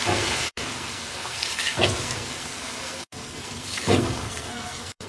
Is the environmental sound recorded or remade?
remade